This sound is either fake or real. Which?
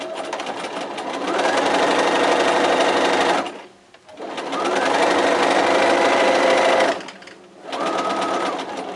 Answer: real